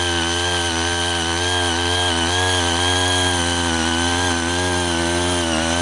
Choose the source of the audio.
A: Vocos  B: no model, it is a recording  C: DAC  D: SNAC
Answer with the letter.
B